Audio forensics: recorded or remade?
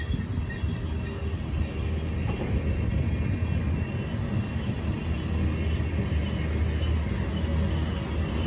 recorded